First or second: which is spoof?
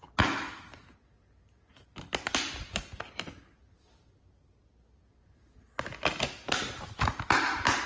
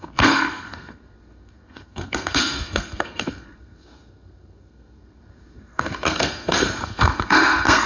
second